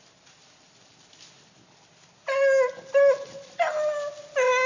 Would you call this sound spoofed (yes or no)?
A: no